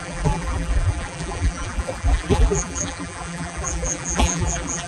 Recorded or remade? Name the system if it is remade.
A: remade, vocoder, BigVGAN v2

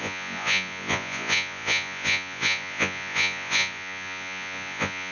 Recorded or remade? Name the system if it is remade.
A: remade, vocoder, Vocos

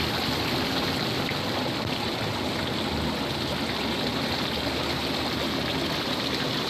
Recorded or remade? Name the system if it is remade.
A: recorded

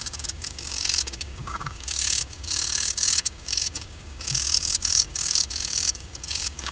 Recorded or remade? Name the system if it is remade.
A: remade, codec, DAC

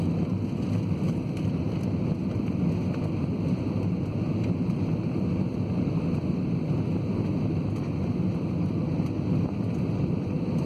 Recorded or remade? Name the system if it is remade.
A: recorded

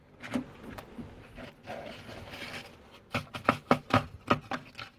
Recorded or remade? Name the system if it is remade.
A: recorded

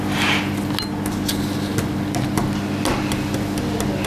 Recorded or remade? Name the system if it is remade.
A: recorded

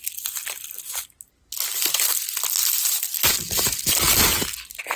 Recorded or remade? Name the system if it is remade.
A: recorded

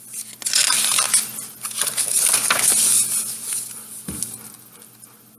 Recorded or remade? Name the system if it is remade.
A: recorded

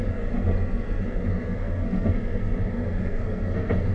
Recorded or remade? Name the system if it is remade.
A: remade, codec, SNAC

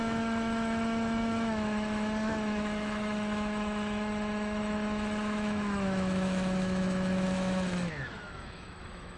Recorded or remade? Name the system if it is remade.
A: remade, autoencoder, DAC-VAE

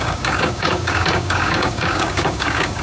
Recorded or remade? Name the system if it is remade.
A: remade, codec, DAC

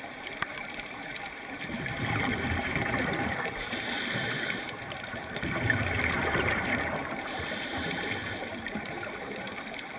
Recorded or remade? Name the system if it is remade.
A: remade, vocoder, BigVGAN v2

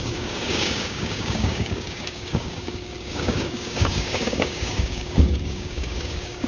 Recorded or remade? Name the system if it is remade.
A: remade, codec, DAC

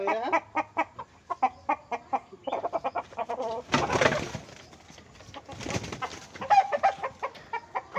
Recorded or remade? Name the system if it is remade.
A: recorded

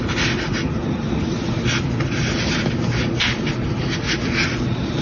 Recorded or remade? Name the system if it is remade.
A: recorded